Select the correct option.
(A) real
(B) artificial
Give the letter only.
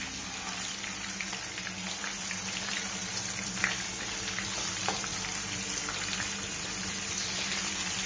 A